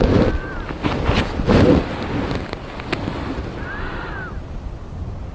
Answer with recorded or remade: recorded